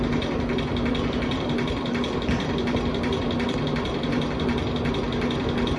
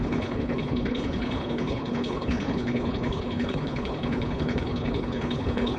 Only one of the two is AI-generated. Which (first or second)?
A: second